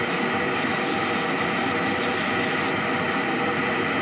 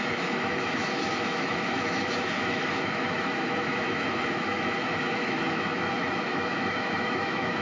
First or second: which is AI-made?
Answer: second